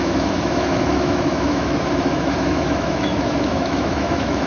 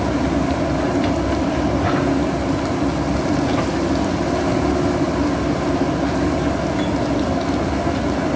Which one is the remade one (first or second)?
first